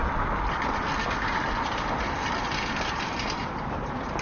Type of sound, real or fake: real